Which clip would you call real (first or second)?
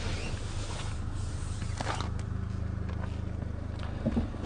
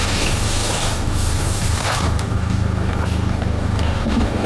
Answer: first